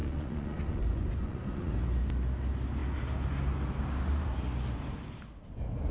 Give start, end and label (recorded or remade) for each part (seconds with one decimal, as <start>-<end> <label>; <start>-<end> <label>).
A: 0.0-1.7 remade; 1.7-5.9 recorded

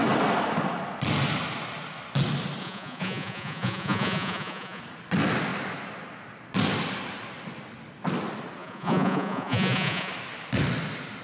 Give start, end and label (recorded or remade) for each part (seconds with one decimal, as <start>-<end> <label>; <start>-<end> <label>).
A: 0.0-2.6 recorded; 2.6-4.8 remade; 4.8-8.6 recorded; 8.6-10.1 remade; 10.1-11.2 recorded

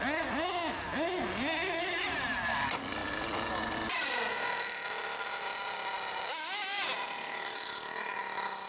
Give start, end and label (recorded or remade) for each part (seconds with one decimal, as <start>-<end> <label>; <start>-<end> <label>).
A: 0.0-8.7 recorded

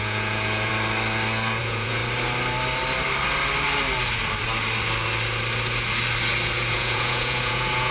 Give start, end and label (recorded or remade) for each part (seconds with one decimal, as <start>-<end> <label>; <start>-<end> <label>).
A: 0.0-0.7 remade; 0.7-1.6 recorded; 1.6-2.0 remade; 2.0-6.7 recorded; 6.7-7.9 remade

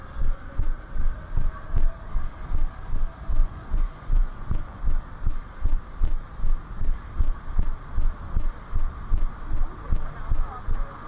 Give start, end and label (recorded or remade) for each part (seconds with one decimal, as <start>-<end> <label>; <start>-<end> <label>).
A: 0.0-3.4 recorded; 3.4-4.8 remade; 4.8-11.1 recorded